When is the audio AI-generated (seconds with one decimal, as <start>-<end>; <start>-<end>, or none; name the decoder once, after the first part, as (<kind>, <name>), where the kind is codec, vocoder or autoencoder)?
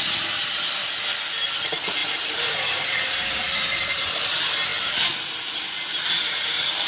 2.0-4.1 (vocoder, BigVGAN v2)